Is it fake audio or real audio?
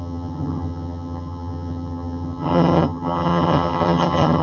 fake